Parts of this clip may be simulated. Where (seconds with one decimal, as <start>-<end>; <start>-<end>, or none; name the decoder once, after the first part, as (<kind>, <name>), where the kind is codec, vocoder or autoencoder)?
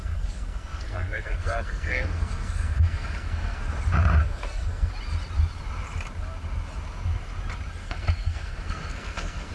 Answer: 0.0-3.7 (codec, SNAC); 4.2-4.9; 7.8-9.5